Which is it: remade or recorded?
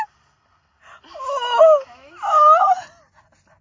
recorded